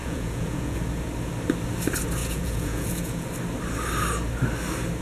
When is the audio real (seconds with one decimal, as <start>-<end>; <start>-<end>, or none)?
0.8-2.2; 3.3-5.0